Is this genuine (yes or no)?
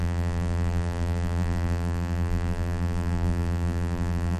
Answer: no